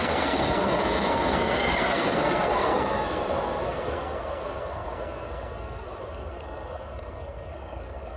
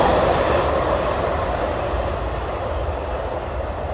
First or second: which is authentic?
second